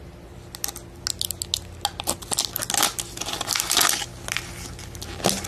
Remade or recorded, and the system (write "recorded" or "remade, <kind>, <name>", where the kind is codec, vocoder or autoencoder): recorded